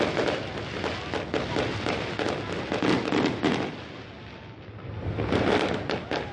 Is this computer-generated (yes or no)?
no